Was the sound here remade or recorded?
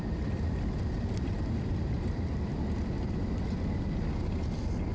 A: remade